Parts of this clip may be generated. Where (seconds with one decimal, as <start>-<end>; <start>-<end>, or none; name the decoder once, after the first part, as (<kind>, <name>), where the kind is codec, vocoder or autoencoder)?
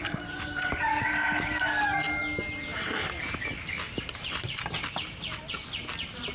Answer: none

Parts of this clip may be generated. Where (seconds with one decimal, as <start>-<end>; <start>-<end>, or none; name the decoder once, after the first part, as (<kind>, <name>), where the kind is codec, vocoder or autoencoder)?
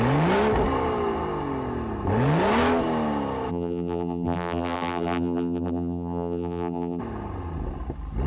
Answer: 3.5-7.0 (vocoder, BigVGAN v2)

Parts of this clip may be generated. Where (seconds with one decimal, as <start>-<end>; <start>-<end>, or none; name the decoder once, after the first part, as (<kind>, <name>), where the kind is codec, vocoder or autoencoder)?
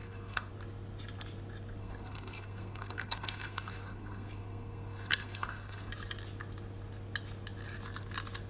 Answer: 0.0-0.5 (codec, SNAC); 1.8-5.9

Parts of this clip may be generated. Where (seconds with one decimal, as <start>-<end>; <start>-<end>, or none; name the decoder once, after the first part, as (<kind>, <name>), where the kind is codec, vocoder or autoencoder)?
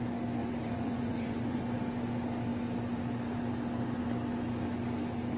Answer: 0.4-1.6 (vocoder, Vocos)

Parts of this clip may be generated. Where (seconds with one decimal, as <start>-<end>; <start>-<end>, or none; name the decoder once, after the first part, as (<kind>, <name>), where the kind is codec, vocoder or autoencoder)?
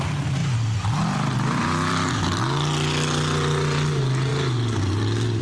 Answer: 0.4-2.1 (vocoder, BigVGAN v2)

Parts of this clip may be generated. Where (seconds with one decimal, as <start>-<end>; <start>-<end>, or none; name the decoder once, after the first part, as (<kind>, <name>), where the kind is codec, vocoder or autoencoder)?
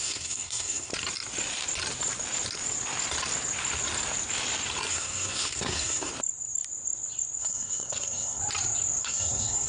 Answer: 0.0-0.9 (codec, SNAC); 4.9-6.1; 7.4-8.4; 9.0-9.7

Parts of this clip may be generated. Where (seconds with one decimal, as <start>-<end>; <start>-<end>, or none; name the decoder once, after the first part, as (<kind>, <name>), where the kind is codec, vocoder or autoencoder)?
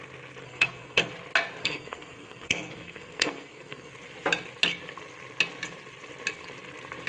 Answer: 0.4-1.1 (codec, SNAC); 1.6-3.9